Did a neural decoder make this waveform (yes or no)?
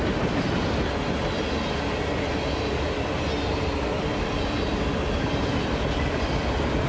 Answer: no